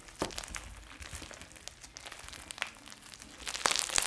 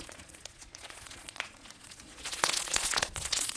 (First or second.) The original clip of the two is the first